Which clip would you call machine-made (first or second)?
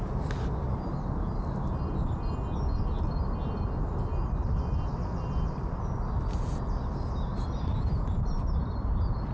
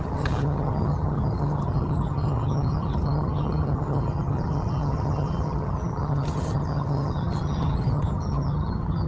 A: second